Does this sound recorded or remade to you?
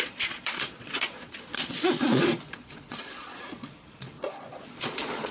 remade